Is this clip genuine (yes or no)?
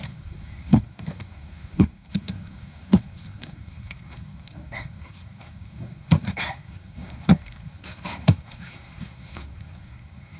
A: no